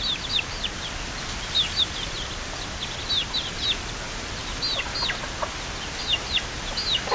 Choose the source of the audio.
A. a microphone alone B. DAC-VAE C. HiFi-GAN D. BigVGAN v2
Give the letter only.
A